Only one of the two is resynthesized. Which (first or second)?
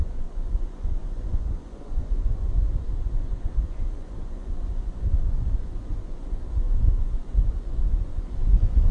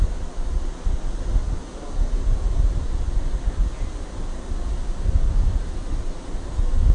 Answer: first